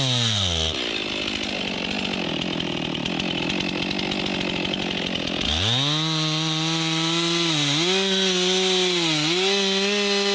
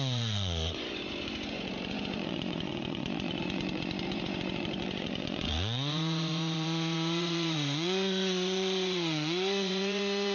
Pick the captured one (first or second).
first